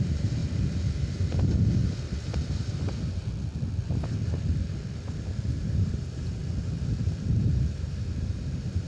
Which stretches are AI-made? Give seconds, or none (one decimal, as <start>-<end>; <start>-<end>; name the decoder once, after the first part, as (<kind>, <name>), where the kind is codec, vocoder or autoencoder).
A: 0.0-0.4 (vocoder, BigVGAN v2); 5.6-6.4; 7.3-8.9